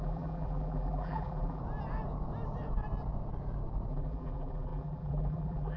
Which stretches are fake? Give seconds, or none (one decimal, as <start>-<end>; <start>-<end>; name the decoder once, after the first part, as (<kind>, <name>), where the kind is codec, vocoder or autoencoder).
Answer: 0.0-1.6 (vocoder, BigVGAN v2); 3.9-5.8